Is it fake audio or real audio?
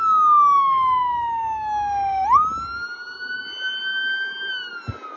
real